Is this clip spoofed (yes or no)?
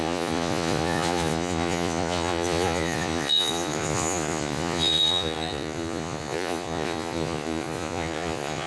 yes